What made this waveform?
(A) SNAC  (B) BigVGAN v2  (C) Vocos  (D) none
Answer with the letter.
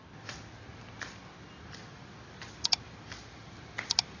D